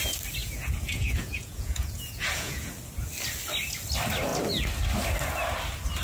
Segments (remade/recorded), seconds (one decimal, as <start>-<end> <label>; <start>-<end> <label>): 0.0-0.4 recorded; 0.4-2.7 remade; 2.7-6.0 recorded